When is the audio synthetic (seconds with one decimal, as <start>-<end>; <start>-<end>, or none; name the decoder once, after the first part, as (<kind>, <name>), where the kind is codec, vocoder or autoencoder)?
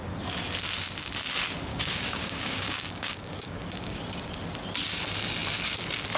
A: 1.7-4.0 (codec, DAC)